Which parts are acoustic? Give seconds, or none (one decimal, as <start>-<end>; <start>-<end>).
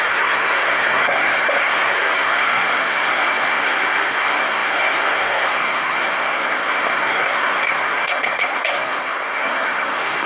none